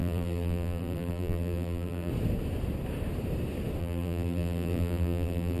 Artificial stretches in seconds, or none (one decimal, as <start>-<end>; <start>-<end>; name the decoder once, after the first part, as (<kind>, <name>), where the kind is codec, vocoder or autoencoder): 0.0-2.1 (vocoder, BigVGAN v2); 3.8-5.6